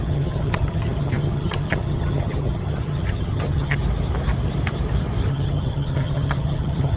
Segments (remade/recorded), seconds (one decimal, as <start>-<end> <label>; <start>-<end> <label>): 0.0-3.8 remade; 3.8-5.3 recorded; 5.3-7.0 remade